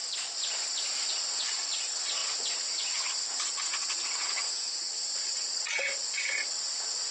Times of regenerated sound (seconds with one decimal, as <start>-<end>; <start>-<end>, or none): 1.1-7.1